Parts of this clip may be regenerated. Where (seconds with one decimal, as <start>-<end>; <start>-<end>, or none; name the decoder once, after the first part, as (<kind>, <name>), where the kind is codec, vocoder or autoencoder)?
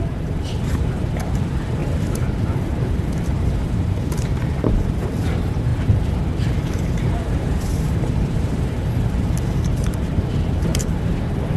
0.0-11.6 (vocoder, BigVGAN v2)